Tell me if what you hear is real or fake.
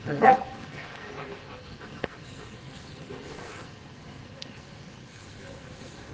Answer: fake